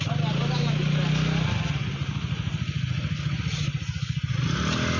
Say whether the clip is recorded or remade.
recorded